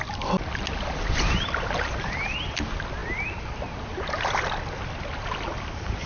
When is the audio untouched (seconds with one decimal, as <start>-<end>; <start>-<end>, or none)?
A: 0.0-6.1